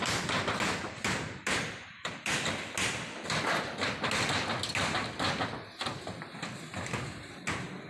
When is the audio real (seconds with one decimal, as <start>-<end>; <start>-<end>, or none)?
0.0-1.8; 2.7-7.9